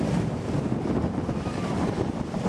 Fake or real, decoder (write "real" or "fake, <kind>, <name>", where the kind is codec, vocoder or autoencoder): fake, vocoder, BigVGAN v2